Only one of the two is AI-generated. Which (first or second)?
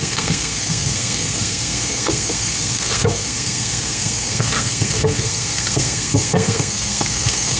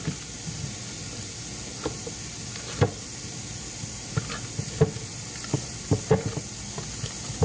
first